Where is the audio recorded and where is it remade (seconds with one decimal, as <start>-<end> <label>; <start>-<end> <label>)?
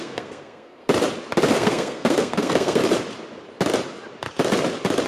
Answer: 0.0-0.8 remade; 0.8-1.5 recorded; 1.5-2.8 remade; 2.8-5.1 recorded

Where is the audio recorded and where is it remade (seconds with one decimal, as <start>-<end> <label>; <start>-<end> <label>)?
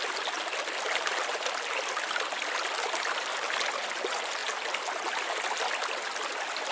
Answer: 0.0-6.7 recorded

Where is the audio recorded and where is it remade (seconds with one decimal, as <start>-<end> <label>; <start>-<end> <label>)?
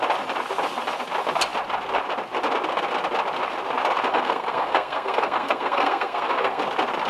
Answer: 0.0-4.1 recorded; 4.1-6.6 remade; 6.6-7.1 recorded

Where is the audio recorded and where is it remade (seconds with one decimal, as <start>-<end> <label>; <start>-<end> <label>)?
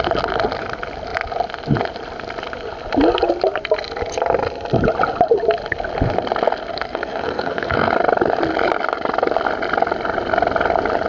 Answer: 0.0-6.7 recorded; 6.7-7.9 remade; 7.9-11.1 recorded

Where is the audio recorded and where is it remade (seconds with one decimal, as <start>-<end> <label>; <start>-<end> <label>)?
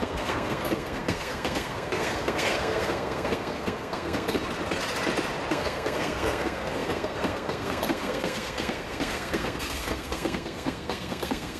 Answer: 0.0-4.4 remade; 4.4-5.5 recorded; 5.5-11.6 remade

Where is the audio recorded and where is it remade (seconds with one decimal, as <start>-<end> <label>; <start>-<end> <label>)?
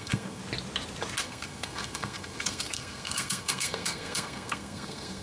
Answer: 0.0-0.4 remade; 0.4-1.2 recorded; 1.2-5.2 remade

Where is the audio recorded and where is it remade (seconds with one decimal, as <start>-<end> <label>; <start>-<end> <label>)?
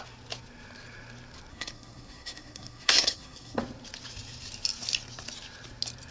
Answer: 0.0-1.5 recorded; 1.5-3.6 remade; 3.6-6.1 recorded